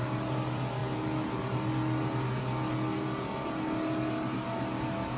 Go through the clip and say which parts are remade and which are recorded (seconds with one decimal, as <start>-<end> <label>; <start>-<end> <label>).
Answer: 0.0-5.2 recorded